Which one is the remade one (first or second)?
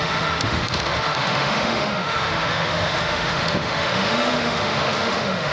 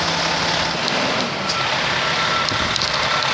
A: first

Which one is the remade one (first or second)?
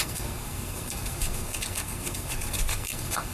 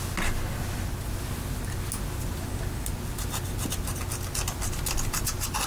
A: first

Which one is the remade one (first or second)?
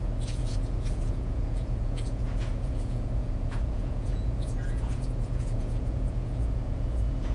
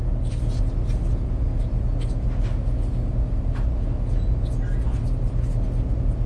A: first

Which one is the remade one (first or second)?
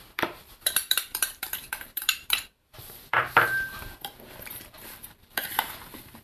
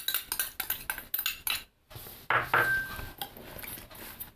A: first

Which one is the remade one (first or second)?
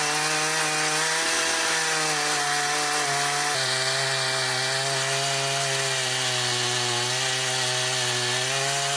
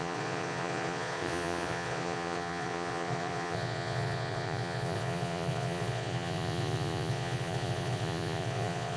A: second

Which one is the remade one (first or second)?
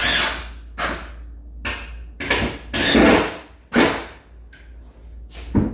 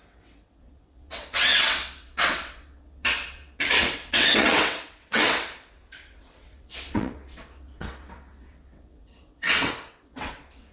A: second